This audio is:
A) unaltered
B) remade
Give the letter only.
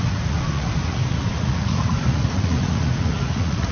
B